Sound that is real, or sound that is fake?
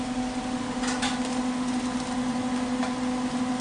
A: real